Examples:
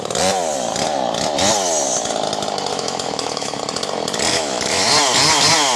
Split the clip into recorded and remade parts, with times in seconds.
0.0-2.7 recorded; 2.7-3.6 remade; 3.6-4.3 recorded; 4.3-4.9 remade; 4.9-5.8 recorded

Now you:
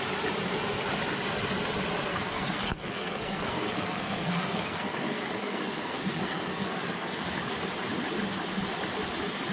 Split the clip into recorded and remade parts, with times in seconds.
0.0-2.1 recorded; 2.1-7.3 remade; 7.3-9.5 recorded